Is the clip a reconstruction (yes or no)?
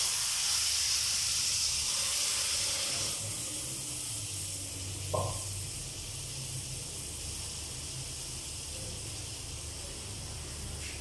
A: no